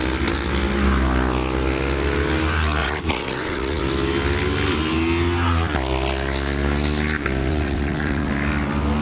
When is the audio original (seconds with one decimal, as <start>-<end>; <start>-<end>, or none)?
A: 0.0-2.8; 3.8-7.5; 8.3-9.0

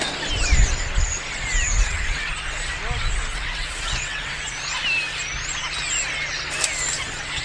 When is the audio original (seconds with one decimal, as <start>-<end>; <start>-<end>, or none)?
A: 0.0-1.8; 2.3-3.3; 4.3-7.4

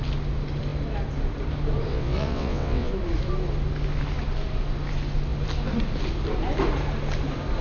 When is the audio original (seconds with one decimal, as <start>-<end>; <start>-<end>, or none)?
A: 0.0-1.9; 2.9-7.6

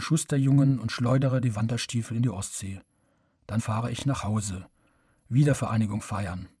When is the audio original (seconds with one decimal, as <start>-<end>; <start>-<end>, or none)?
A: 3.1-3.6

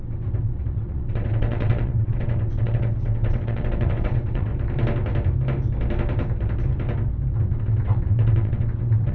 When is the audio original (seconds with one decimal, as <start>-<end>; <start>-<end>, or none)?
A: 4.5-7.6

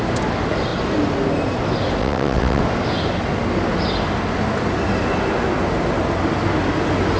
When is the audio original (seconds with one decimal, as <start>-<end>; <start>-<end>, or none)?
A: 0.0-2.0; 2.6-7.2